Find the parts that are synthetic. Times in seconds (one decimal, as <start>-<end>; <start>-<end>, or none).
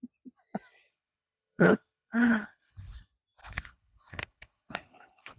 0.9-3.0; 3.4-5.4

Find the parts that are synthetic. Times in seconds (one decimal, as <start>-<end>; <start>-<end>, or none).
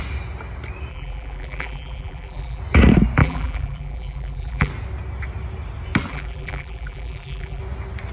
0.9-2.6; 3.2-4.7; 6.1-7.6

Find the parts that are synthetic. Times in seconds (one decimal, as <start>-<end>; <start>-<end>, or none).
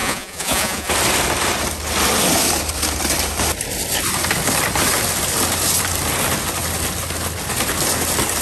0.0-0.9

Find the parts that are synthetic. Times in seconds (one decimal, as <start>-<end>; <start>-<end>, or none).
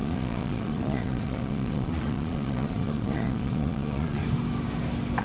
0.0-4.2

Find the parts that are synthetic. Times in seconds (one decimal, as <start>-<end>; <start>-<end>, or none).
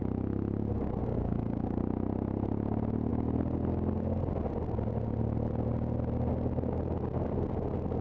1.1-1.8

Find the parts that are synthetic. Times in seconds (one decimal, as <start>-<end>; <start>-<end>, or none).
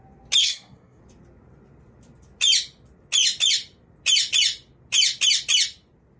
0.4-1.0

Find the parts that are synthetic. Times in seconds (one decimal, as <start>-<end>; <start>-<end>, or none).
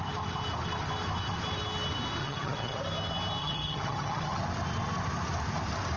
2.2-2.8; 3.4-4.4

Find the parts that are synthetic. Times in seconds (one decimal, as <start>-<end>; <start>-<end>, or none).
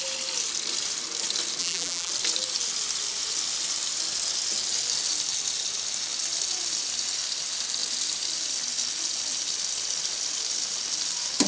1.6-2.1